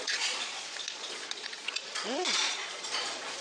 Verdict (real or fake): fake